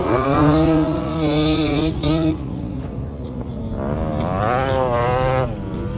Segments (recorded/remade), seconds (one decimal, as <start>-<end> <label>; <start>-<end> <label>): 0.0-3.6 remade; 3.6-6.0 recorded